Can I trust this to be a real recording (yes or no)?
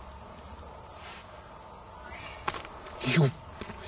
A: yes